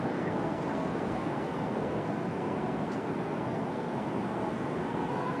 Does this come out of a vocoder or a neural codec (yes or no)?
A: yes